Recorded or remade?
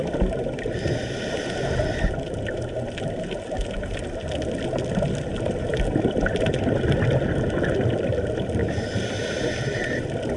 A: recorded